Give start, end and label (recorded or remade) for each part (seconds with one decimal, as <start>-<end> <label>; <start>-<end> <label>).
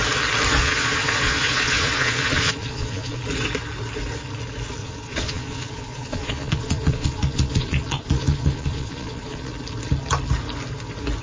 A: 0.0-0.6 recorded; 0.6-3.2 remade; 3.2-4.8 recorded; 4.8-9.5 remade; 9.5-11.2 recorded